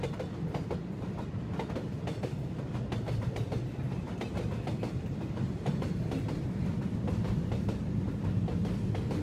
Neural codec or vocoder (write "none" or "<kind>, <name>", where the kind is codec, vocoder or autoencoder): none